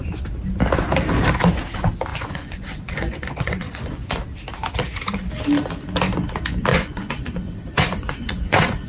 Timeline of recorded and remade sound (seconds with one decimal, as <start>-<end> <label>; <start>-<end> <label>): 0.0-2.1 recorded; 2.1-4.2 remade; 4.2-6.7 recorded; 6.7-8.9 remade